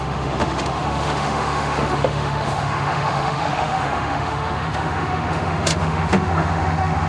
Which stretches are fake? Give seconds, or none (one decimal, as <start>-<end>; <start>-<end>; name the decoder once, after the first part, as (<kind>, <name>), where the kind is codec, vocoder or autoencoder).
0.0-7.1 (autoencoder, DAC-VAE)